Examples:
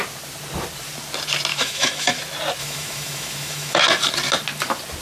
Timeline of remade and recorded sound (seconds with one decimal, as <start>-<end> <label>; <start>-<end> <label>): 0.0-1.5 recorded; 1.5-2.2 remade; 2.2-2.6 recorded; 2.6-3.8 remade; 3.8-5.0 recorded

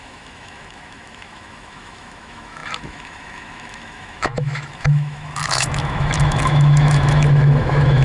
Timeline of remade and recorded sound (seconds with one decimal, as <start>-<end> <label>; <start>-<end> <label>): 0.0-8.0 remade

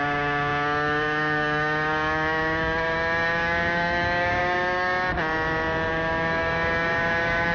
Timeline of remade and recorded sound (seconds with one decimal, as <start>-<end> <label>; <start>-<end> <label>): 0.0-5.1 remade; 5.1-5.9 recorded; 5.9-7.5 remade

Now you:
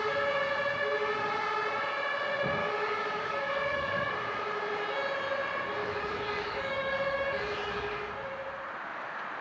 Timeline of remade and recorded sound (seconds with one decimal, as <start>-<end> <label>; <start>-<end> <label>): 0.0-2.6 recorded; 2.6-4.1 remade; 4.1-5.8 recorded; 5.8-8.1 remade; 8.1-9.4 recorded